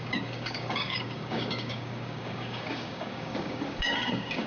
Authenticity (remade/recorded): remade